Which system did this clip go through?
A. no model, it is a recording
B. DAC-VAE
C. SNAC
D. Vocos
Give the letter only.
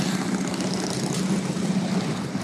A